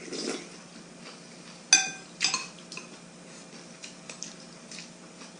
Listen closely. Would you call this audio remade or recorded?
recorded